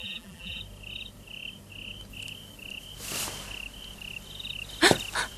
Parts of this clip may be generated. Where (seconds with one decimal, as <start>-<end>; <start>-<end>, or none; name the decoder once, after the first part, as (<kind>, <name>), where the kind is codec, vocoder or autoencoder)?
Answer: 0.0-0.6 (vocoder, BigVGAN v2)